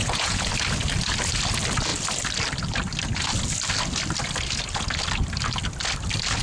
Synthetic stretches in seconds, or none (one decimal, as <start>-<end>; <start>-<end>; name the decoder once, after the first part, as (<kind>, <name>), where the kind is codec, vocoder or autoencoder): 0.0-0.5 (vocoder, Vocos)